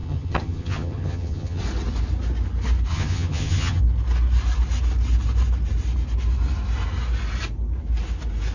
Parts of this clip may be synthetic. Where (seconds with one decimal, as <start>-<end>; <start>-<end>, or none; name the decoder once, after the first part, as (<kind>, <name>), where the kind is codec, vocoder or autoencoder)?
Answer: 0.0-1.6 (vocoder, HiFi-GAN); 2.9-3.8